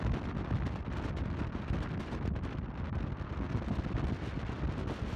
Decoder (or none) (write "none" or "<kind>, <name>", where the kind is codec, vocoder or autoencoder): none